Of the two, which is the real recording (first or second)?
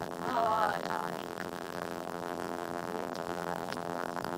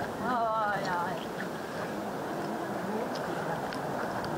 second